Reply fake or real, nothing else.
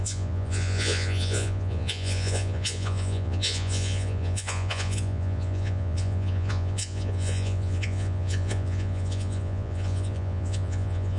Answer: fake